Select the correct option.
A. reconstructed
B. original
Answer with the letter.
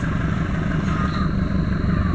B